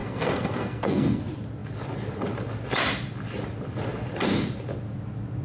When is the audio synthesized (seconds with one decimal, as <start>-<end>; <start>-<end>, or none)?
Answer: 0.0-1.2